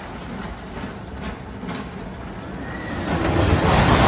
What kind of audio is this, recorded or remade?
recorded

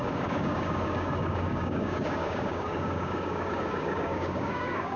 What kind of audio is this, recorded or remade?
remade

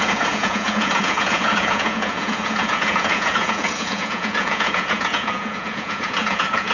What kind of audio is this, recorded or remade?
remade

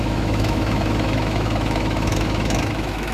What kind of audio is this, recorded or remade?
remade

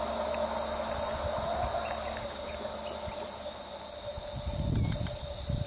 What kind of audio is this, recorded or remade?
recorded